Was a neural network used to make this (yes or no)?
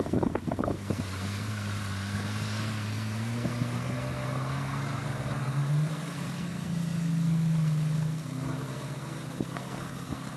yes